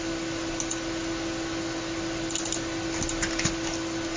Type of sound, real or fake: real